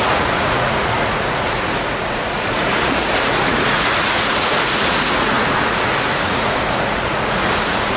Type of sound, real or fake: fake